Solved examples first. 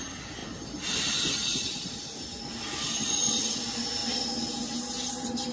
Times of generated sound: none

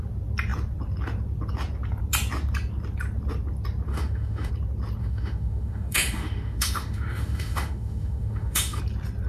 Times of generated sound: 3.9-4.5 (autoencoder, DAC-VAE); 5.0-8.8

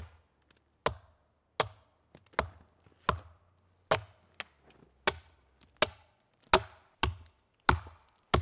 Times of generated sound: none

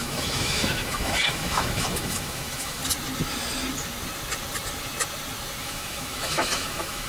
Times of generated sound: 0.0-2.8 (autoencoder, DAC-VAE); 5.6-7.1

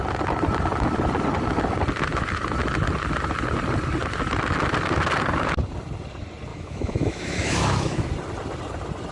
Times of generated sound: 6.5-8.1 (autoencoder, DAC-VAE)

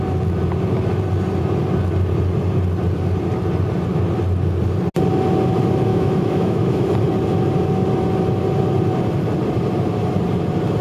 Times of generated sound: 5.9-6.9 (autoencoder, DAC-VAE)